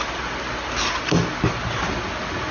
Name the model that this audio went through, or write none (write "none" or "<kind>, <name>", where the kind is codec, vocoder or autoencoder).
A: none